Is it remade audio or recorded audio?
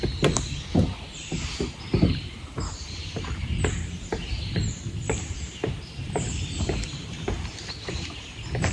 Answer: remade